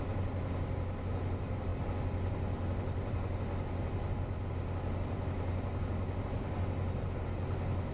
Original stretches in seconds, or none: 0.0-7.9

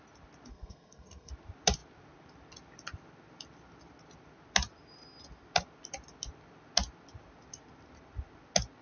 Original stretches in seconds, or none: 0.0-0.5; 1.3-8.8

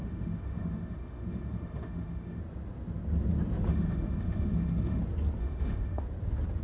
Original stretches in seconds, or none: 2.4-3.7; 5.0-5.4; 6.0-6.6

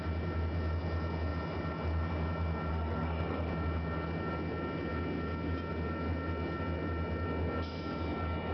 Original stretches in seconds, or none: 0.0-2.7; 3.5-8.5

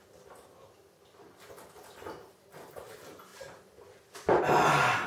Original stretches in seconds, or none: 0.0-5.1

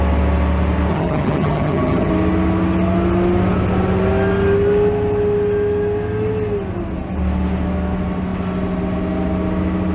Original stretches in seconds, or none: 0.0-0.9; 2.1-9.9